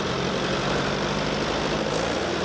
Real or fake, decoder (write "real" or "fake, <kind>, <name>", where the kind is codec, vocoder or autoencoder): fake, vocoder, BigVGAN v2